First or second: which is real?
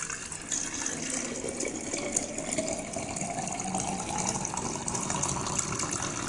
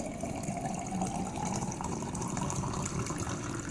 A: first